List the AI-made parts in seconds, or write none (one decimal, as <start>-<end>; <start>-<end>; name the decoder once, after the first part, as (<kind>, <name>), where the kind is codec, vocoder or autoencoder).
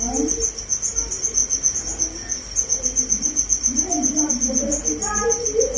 none